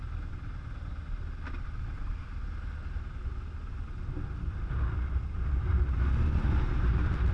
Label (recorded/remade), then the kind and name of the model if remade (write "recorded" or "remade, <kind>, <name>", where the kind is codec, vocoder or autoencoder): recorded